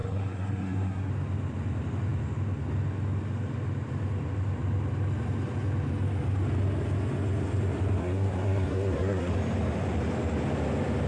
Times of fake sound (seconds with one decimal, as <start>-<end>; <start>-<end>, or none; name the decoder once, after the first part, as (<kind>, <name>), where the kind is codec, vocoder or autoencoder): 0.0-1.1 (codec, SNAC); 8.0-9.3